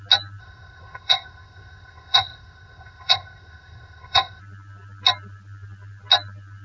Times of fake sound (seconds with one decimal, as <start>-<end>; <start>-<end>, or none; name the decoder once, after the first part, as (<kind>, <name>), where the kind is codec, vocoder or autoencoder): 0.4-4.4 (codec, ZipCodec)

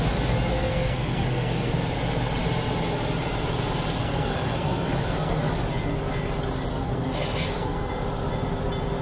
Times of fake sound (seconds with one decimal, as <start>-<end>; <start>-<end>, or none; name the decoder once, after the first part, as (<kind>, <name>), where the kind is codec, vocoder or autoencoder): 0.5-1.7 (codec, SNAC); 4.0-5.5; 6.7-7.9

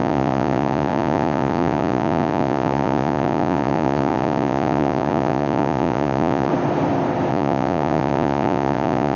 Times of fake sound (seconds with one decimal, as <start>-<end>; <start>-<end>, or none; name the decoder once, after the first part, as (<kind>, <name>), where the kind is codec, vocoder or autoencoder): 0.0-6.5 (vocoder, Vocos); 7.3-9.2

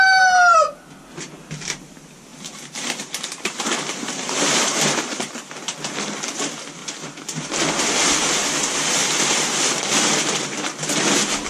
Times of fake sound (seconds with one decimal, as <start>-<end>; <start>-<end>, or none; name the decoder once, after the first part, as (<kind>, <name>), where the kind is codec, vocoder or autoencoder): 2.3-5.3 (vocoder, BigVGAN v2); 6.8-7.5; 9.0-10.7

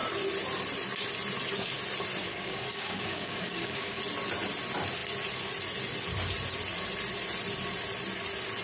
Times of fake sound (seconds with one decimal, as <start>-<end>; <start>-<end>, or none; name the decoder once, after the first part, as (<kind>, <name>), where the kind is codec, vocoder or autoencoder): 2.3-4.0 (codec, DAC)

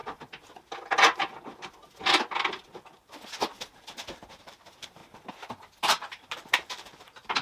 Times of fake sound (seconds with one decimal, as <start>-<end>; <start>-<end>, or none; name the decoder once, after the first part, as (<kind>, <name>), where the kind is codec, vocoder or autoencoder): 4.4-5.0 (vocoder, BigVGAN v2); 5.8-7.4